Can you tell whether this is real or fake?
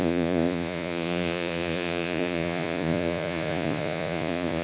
fake